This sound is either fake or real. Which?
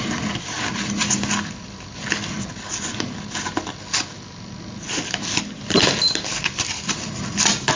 real